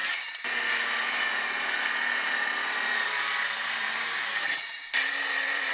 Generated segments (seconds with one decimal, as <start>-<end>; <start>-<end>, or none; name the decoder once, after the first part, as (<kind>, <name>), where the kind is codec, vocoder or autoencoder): 2.2-5.7 (vocoder, BigVGAN v2)